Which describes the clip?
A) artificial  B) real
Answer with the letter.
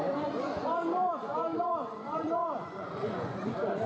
A